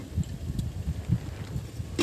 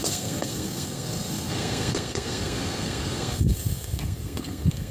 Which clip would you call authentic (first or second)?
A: first